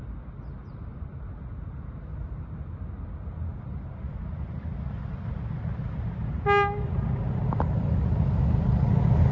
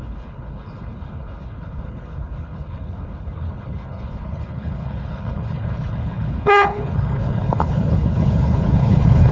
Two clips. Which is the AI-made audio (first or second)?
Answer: second